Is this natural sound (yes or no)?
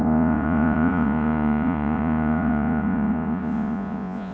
no